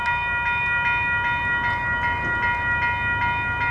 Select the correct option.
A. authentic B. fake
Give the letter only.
A